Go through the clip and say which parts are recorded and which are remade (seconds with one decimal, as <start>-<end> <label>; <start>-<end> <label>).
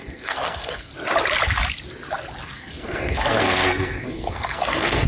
0.0-0.9 remade; 0.9-2.4 recorded; 2.4-5.1 remade